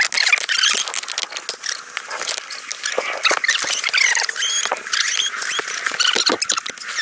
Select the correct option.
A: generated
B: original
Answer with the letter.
B